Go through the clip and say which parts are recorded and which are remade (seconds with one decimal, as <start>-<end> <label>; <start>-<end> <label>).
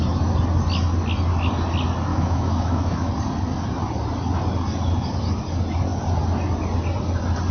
0.0-2.1 recorded; 2.1-3.1 remade; 3.1-7.5 recorded